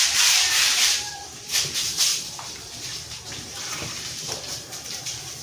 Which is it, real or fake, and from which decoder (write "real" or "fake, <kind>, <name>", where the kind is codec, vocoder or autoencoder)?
fake, vocoder, BigVGAN v2